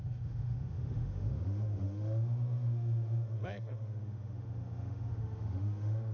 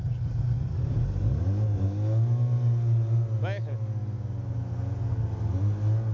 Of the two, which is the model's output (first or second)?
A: first